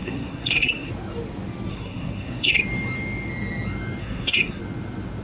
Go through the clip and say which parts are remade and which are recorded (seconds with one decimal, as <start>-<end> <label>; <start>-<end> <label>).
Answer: 0.0-0.9 remade; 0.9-1.7 recorded; 1.7-2.6 remade; 2.6-4.0 recorded; 4.0-4.6 remade; 4.6-5.2 recorded